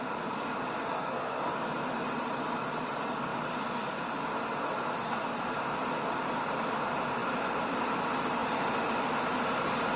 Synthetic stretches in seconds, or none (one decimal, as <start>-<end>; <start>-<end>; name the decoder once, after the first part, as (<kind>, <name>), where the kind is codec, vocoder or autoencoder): 0.9-1.5 (codec, SNAC)